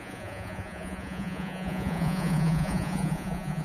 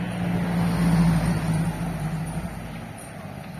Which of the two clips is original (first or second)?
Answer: second